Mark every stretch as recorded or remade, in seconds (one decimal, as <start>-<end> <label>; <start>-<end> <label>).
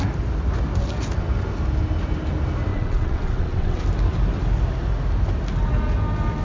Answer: 0.0-2.7 recorded; 2.7-3.8 remade; 3.8-6.4 recorded